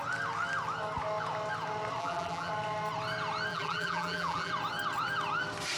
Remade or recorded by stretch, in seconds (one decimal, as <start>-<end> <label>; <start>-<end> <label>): 0.0-2.0 recorded; 2.0-2.5 remade; 2.5-3.5 recorded; 3.5-4.5 remade; 4.5-5.8 recorded